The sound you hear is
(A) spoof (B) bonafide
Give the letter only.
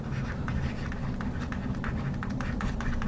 B